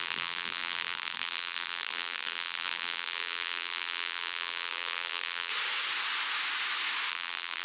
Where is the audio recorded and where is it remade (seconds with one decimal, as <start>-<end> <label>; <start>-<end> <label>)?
0.0-5.5 remade; 5.5-7.1 recorded; 7.1-7.6 remade